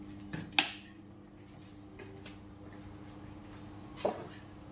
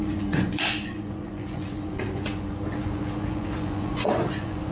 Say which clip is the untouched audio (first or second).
first